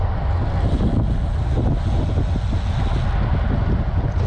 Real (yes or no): yes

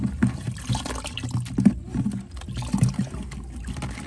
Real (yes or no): yes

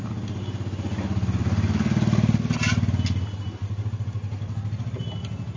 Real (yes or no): yes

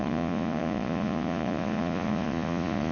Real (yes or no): no